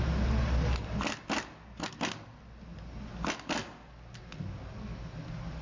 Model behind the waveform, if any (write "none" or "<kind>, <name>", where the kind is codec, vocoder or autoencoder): none